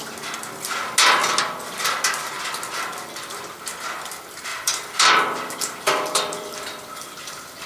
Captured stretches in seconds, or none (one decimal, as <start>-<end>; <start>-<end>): 0.0-4.5